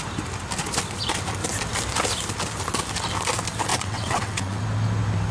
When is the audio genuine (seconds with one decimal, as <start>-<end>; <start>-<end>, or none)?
0.0-3.7; 4.6-5.3